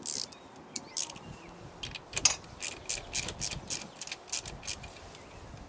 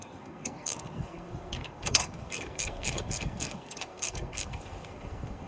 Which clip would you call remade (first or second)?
second